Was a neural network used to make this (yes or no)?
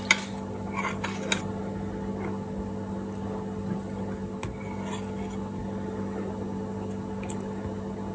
no